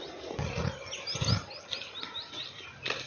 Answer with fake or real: real